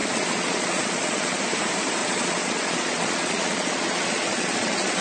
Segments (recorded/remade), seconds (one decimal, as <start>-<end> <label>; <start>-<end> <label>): 0.0-1.4 remade; 1.4-2.0 recorded; 2.0-5.0 remade